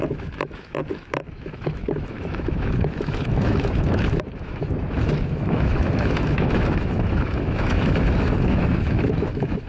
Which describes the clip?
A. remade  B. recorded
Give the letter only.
A